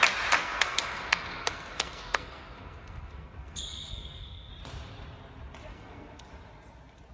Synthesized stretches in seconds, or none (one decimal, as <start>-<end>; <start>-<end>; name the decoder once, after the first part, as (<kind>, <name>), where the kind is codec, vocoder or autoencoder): 0.4-4.5 (codec, SNAC); 5.7-6.3